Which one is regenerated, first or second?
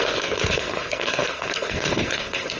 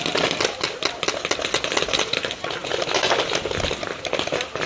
first